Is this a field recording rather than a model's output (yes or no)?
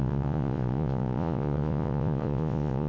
no